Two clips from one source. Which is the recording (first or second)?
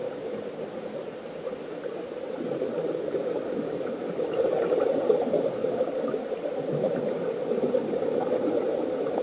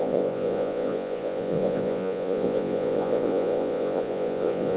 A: first